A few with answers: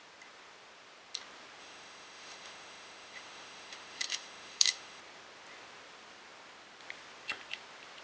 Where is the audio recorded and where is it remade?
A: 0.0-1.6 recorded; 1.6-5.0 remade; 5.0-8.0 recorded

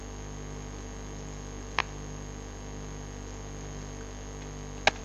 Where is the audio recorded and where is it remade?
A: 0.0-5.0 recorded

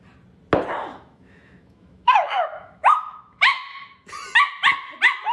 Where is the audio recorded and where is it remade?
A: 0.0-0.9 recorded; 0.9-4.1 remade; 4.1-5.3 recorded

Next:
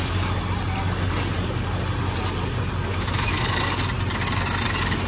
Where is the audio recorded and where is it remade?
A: 0.0-2.9 recorded; 2.9-3.6 remade; 3.6-5.1 recorded

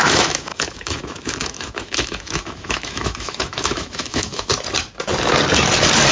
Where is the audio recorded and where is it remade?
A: 0.0-4.5 remade; 4.5-6.1 recorded

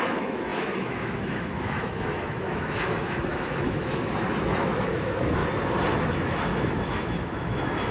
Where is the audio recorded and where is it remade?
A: 0.0-5.4 remade; 5.4-6.0 recorded; 6.0-7.9 remade

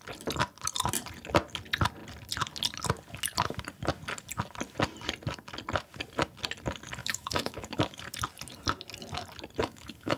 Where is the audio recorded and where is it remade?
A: 0.0-7.0 recorded; 7.0-8.0 remade; 8.0-9.6 recorded; 9.6-10.2 remade

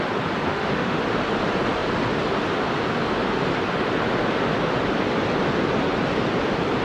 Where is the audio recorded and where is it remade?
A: 0.0-0.5 recorded; 0.5-1.0 remade; 1.0-6.8 recorded